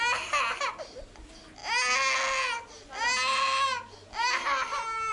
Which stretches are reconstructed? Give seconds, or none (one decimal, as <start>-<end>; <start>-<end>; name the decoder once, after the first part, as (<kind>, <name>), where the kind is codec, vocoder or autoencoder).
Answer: none